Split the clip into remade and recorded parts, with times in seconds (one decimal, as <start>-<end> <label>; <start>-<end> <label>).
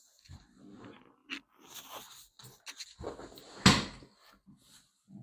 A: 0.0-5.2 recorded